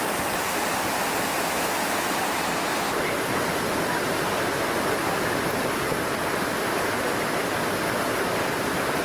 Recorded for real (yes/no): yes